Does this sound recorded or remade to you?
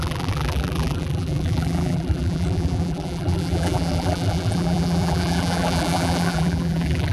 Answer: remade